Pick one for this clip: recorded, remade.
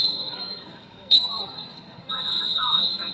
remade